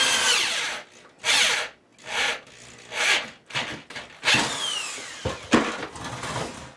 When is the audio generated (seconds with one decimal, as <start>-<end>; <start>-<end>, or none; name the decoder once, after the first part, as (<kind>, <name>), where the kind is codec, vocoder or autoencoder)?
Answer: none